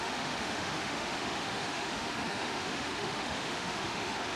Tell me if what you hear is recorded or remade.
remade